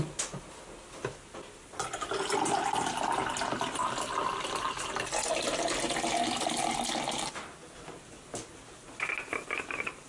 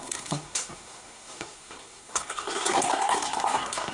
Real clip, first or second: first